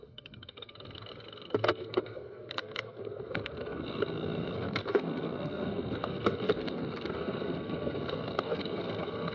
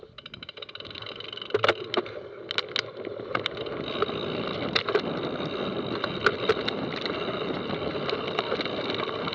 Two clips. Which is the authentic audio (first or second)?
second